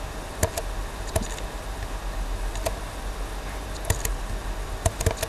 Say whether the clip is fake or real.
real